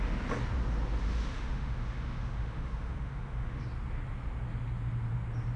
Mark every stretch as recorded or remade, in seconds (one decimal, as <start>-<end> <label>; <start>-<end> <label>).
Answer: 0.0-1.0 recorded; 1.0-3.6 remade; 3.6-5.6 recorded